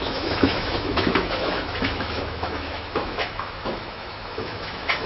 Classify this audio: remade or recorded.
remade